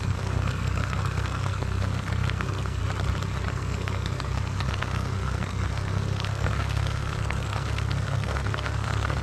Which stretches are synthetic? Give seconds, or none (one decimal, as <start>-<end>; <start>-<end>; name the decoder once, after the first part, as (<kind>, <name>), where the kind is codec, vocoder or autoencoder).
0.0-2.8 (codec, SNAC); 3.5-9.2